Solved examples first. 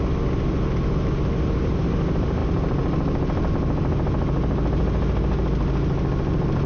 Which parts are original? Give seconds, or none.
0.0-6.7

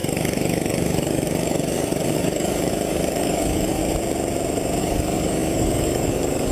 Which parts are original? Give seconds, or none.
3.8-4.8

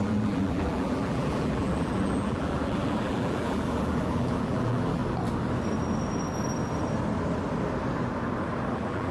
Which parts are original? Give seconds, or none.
5.0-8.7

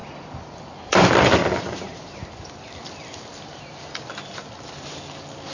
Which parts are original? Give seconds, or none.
1.0-1.4; 2.2-5.5

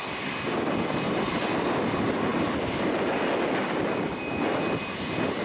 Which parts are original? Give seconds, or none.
0.0-5.4